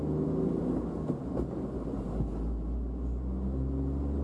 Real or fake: real